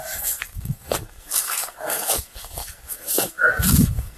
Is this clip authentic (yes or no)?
no